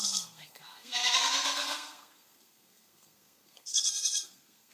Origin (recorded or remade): remade